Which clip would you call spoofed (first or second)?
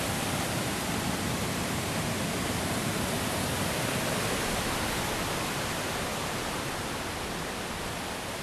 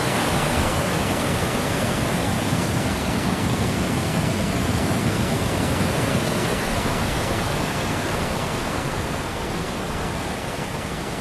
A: second